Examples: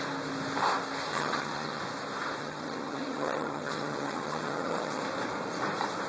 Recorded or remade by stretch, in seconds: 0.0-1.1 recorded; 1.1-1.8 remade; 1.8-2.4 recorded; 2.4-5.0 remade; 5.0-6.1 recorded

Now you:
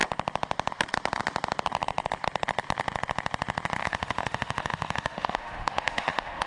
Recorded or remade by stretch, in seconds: 0.0-3.8 recorded; 3.8-6.5 remade

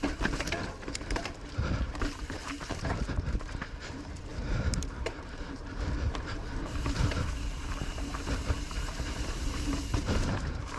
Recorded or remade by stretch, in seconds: 0.0-10.8 remade